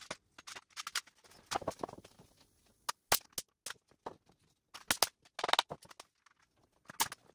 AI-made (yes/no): no